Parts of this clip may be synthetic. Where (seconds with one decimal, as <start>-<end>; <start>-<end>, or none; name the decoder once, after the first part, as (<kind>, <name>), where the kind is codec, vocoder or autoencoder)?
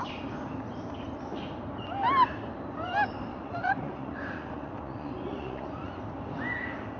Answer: 3.3-6.0 (vocoder, Vocos)